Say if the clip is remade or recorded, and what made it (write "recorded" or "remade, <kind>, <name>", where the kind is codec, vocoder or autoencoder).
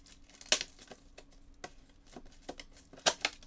recorded